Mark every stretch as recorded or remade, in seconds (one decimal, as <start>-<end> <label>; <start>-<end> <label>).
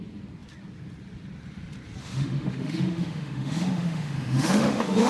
0.0-2.0 recorded; 2.0-5.1 remade